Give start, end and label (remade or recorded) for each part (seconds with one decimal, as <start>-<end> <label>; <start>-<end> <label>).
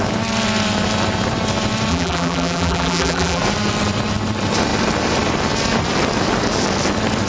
0.0-1.9 recorded; 1.9-3.4 remade; 3.4-7.3 recorded